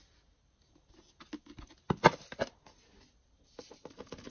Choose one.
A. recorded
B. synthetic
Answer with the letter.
A